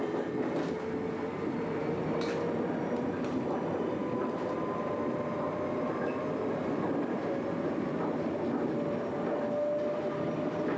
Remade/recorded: recorded